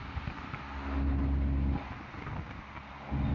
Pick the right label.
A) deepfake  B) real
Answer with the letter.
B